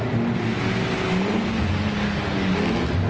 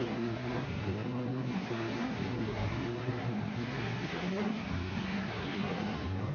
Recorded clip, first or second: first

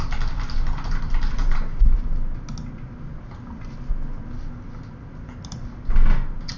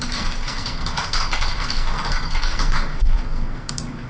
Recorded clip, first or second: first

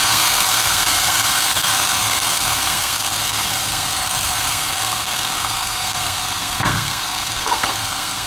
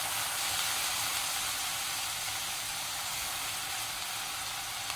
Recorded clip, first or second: second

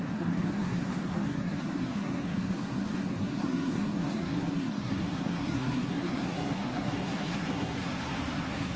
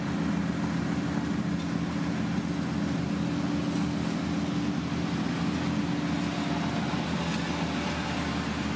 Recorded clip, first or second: second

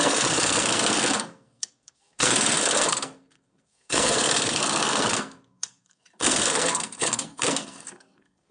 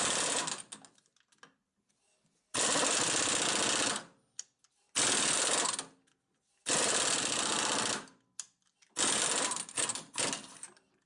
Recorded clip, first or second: second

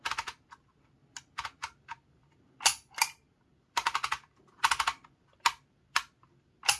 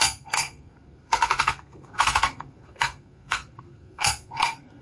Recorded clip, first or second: first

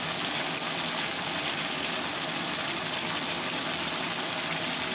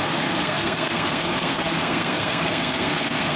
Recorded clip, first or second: first